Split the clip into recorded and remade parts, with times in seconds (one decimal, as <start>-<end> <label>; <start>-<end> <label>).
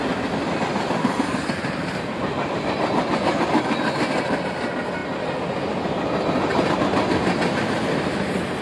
0.0-8.6 recorded